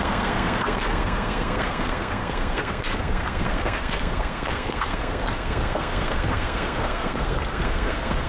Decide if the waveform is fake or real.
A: fake